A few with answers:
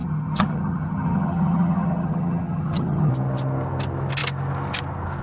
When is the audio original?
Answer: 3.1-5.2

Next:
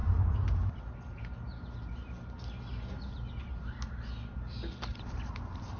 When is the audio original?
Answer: 0.8-4.9

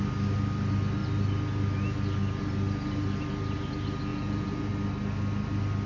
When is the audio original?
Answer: 0.0-4.1; 4.7-5.9

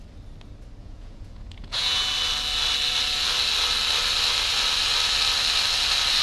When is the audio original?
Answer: 0.0-0.8; 2.1-6.2

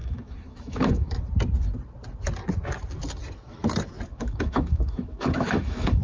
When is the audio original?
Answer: 1.1-4.1

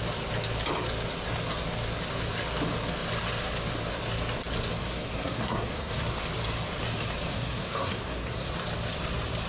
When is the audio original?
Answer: 0.0-4.8; 6.0-7.3; 8.5-9.5

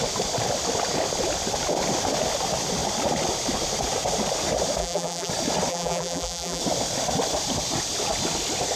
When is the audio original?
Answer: 0.0-4.8; 5.3-5.7; 6.6-8.8